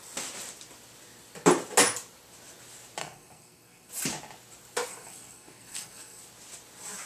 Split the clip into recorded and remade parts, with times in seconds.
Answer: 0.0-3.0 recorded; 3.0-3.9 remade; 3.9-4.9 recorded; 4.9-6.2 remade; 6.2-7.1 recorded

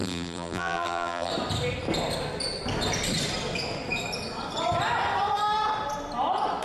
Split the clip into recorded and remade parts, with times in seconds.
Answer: 0.0-1.3 remade; 1.3-6.6 recorded

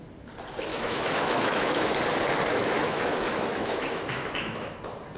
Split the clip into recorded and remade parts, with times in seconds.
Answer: 0.0-0.7 recorded; 0.7-2.0 remade; 2.0-2.5 recorded; 2.5-4.7 remade; 4.7-5.2 recorded

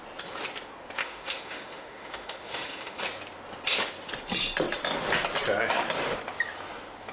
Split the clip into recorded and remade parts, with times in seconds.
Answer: 0.0-1.0 recorded; 1.0-3.0 remade; 3.0-7.1 recorded

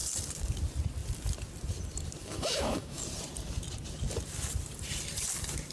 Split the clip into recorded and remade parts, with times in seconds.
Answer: 0.0-2.2 recorded; 2.2-3.0 remade; 3.0-5.7 recorded